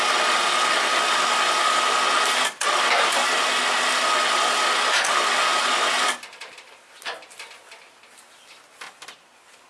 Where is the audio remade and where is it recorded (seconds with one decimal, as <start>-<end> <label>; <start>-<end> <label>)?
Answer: 0.0-9.7 recorded